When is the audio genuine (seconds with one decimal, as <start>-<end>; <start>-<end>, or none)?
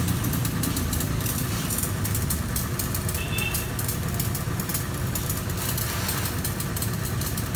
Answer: 0.0-0.4; 1.8-7.6